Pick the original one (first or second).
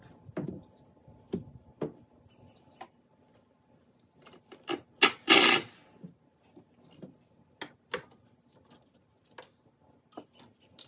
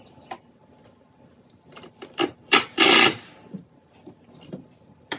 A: first